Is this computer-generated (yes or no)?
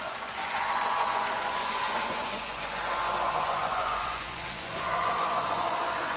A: yes